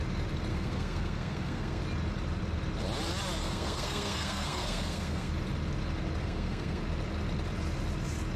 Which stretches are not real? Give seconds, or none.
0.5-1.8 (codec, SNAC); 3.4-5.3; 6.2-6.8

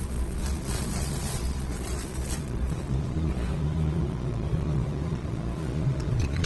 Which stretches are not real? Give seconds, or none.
0.0-6.5 (vocoder, Vocos)

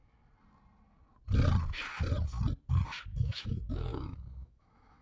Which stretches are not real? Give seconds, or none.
3.1-5.0 (autoencoder, DAC-VAE)

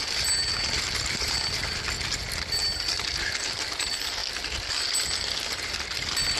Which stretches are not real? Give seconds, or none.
none

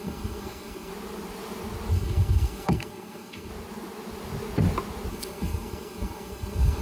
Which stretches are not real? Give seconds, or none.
0.0-0.9 (codec, SNAC); 1.9-3.5; 5.1-6.8

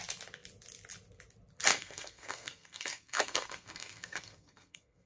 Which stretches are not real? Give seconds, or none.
1.7-5.1 (codec, SNAC)

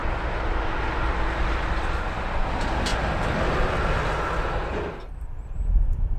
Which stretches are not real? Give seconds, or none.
none

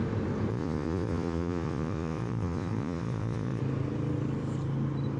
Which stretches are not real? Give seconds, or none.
0.5-3.6 (vocoder, Vocos)